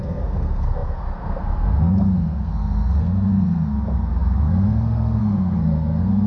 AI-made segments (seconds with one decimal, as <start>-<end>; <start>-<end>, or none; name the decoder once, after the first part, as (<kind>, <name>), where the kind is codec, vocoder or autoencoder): 0.0-6.3 (codec, SNAC)